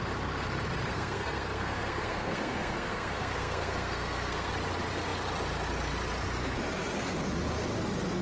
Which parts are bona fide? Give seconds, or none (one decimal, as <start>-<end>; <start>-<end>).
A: 0.0-0.9; 4.5-8.2